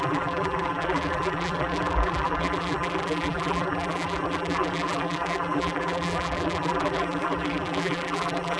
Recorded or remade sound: remade